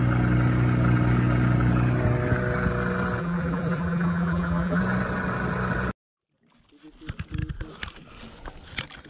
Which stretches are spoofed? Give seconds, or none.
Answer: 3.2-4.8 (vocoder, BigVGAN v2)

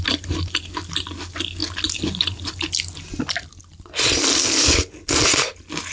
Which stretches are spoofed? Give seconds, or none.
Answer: none

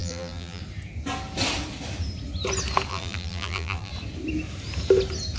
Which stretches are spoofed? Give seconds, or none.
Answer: 0.0-0.6 (vocoder, BigVGAN v2); 2.9-3.9

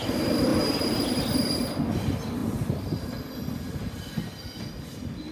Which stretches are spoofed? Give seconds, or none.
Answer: 0.5-1.2 (vocoder, BigVGAN v2)